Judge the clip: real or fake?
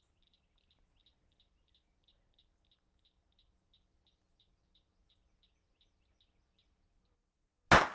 real